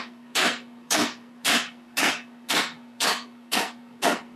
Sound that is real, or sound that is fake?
fake